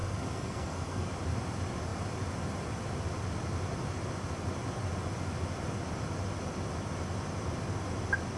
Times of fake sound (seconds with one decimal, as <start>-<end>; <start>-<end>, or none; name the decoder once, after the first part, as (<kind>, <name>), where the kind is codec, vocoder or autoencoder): 0.0-1.1 (codec, SNAC)

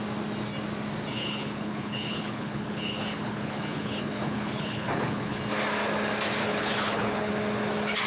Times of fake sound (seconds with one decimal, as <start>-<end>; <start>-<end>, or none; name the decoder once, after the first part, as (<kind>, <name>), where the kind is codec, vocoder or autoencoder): 1.1-5.4 (codec, HILCodec); 6.4-7.3

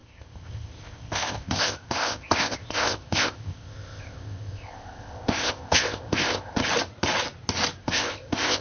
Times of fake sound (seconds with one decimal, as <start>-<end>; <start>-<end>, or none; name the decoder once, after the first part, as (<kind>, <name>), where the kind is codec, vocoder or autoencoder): 0.0-6.6 (codec, ZipCodec); 7.8-8.6